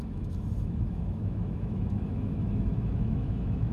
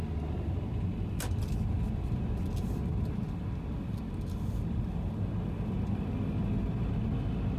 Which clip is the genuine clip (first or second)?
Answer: second